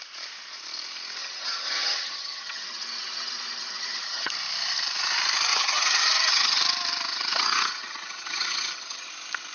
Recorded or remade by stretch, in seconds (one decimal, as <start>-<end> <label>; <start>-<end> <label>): 0.0-1.2 recorded; 1.2-4.3 remade; 4.3-5.5 recorded; 5.5-6.6 remade; 6.6-7.1 recorded; 7.1-9.1 remade; 9.1-9.5 recorded